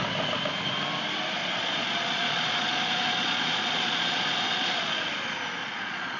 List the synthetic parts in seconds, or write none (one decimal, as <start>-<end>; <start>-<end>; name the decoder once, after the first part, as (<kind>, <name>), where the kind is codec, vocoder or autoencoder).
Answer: 1.4-5.1 (vocoder, Vocos); 5.6-6.2